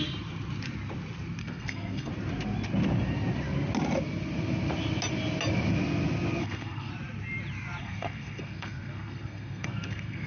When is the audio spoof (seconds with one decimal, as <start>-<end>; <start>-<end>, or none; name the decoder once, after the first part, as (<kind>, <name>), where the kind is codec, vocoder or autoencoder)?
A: 1.4-2.1 (codec, SNAC); 6.4-6.9; 7.8-10.3